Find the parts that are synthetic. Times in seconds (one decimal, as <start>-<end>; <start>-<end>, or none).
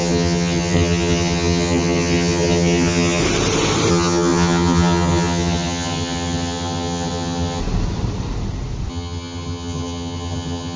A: 0.0-3.2; 3.9-7.6; 8.9-10.8